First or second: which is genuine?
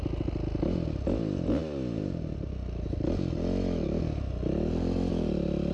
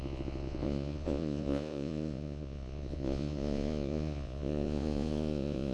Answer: first